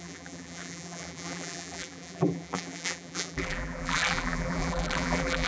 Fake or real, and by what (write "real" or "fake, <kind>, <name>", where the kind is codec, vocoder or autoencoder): fake, vocoder, BigVGAN v2